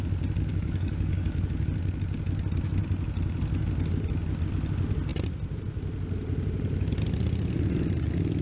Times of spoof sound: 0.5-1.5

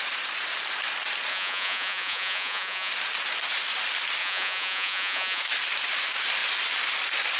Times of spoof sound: 1.3-2.9; 4.2-5.4

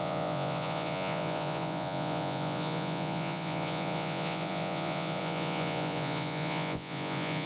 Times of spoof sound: 0.0-7.5

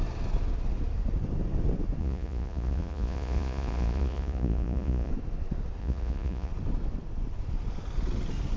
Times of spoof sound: 2.0-5.1; 5.8-6.5

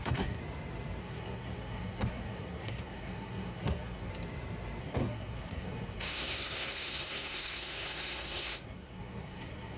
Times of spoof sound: 0.0-0.4; 1.0-4.1; 4.8-9.8

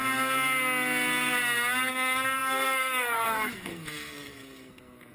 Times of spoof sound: 1.9-5.1